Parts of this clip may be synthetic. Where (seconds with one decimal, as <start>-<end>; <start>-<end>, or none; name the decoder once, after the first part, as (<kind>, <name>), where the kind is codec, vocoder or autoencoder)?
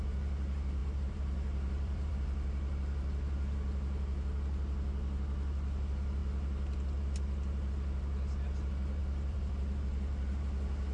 0.8-2.1 (vocoder, BigVGAN v2); 9.0-9.5